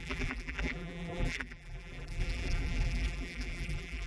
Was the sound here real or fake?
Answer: fake